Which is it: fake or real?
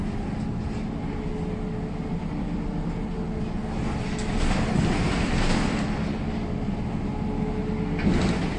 real